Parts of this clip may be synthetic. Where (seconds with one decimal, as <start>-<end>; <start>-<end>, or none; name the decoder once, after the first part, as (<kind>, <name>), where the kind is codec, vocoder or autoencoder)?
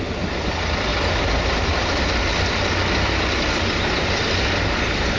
none